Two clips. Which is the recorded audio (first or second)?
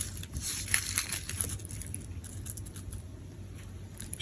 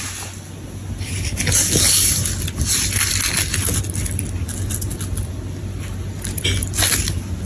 second